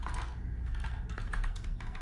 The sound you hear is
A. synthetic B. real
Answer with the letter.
A